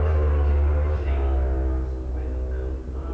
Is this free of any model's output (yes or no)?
yes